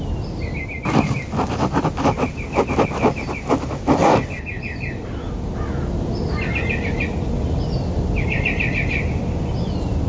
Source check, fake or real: real